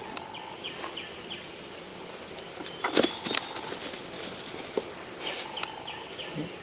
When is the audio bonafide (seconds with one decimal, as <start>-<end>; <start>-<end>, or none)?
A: 0.0-6.6